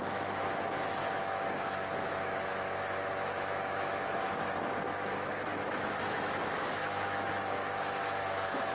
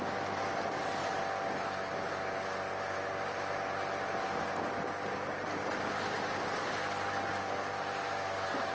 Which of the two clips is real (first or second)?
second